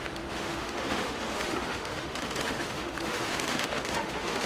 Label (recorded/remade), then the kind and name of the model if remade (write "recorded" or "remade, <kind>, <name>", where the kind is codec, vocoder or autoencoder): remade, autoencoder, DAC-VAE